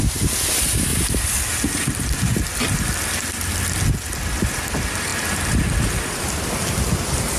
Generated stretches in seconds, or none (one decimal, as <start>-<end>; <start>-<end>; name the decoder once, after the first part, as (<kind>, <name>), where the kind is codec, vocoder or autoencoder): 0.9-3.5 (vocoder, BigVGAN v2); 5.1-6.3